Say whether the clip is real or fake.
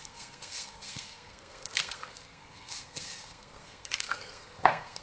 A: fake